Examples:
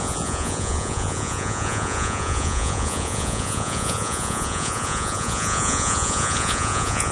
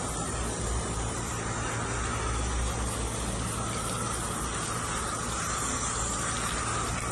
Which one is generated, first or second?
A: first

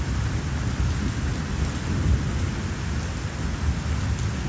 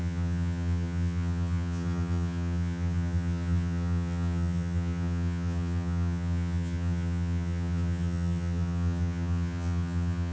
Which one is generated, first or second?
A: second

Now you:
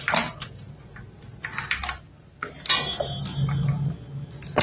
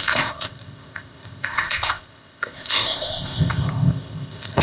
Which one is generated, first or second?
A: second